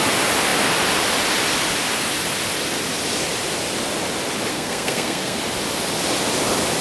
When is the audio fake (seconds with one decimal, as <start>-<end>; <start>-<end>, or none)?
4.5-5.4